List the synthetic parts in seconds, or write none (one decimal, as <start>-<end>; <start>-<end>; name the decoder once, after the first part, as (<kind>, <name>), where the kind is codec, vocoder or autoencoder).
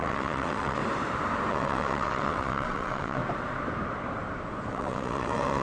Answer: 0.0-0.8 (vocoder, WaveNeXt); 1.5-3.2; 4.7-5.6